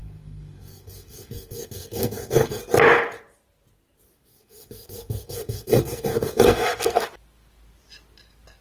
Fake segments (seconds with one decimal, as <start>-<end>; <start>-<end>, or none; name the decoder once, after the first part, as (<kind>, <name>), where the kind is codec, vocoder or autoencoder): 0.0-2.6 (codec, SNAC); 4.3-7.0